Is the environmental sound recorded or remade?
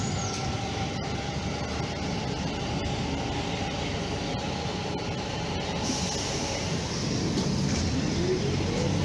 recorded